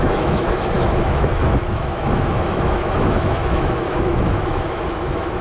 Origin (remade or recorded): remade